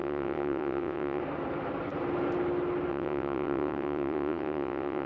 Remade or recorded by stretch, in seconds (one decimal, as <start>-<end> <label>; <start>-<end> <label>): 0.0-1.2 remade; 1.2-2.9 recorded; 2.9-5.1 remade